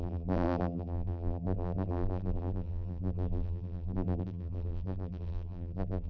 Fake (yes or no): yes